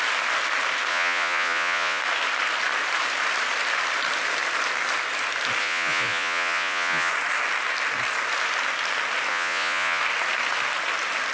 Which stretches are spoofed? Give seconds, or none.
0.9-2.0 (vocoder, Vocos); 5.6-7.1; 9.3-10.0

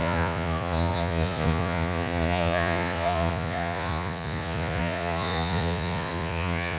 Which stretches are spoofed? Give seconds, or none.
0.0-6.8 (vocoder, Vocos)

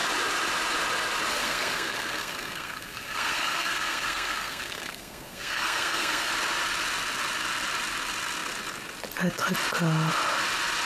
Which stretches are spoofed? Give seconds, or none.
1.3-6.3 (codec, SNAC)

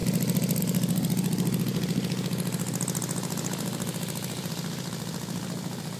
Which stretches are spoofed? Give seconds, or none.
none